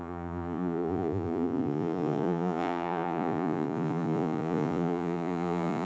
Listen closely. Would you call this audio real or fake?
fake